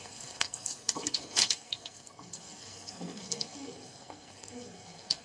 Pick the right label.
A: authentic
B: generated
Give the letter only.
B